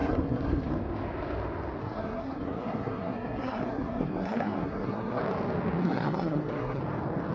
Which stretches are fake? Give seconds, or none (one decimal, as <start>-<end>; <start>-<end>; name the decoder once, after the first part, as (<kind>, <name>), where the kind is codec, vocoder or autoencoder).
0.0-0.7 (codec, SNAC); 1.8-5.2; 5.8-6.8